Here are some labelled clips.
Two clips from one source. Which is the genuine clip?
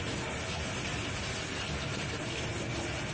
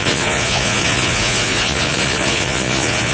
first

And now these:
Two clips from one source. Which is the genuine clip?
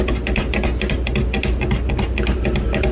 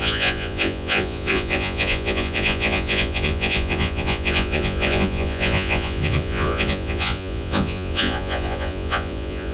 first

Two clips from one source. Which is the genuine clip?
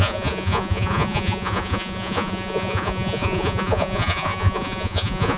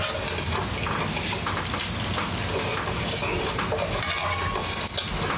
second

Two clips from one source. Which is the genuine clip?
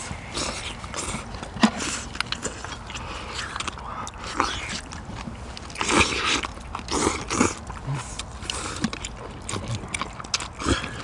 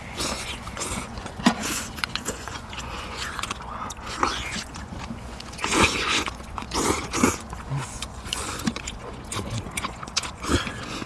first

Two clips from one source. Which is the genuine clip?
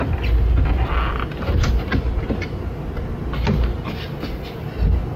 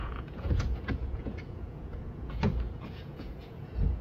first